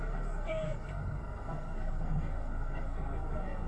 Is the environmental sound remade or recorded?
remade